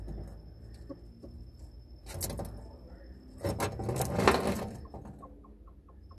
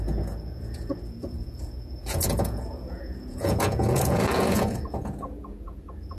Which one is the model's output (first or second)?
second